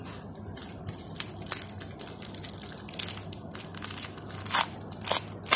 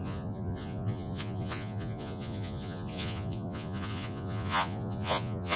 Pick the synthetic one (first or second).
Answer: second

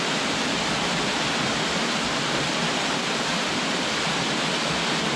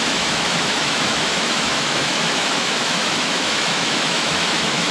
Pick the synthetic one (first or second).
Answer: second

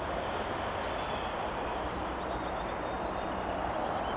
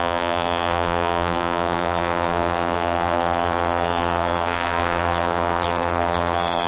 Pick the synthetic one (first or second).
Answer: second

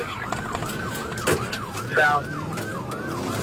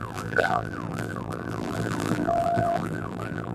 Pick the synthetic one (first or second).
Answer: second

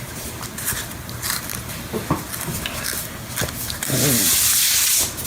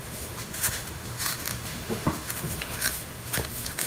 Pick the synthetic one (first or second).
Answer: second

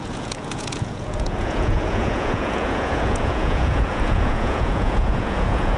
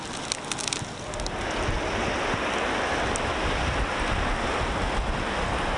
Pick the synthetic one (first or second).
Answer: first